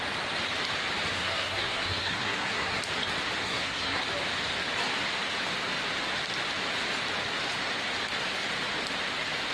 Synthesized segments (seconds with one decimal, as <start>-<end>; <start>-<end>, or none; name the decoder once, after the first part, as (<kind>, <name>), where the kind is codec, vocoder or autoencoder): 1.2-2.8 (codec, SNAC); 3.4-4.0